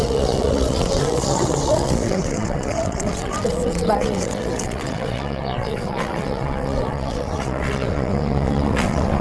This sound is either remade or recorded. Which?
remade